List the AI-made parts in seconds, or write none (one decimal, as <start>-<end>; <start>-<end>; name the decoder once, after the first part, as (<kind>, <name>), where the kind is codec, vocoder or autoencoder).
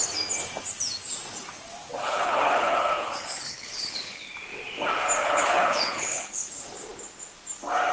2.0-4.3 (codec, HILCodec); 5.2-6.5